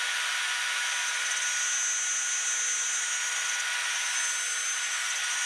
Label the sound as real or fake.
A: real